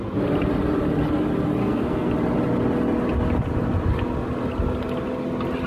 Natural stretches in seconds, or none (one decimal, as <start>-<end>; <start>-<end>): 0.0-1.6; 2.1-5.7